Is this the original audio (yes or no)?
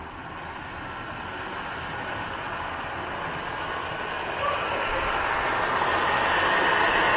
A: yes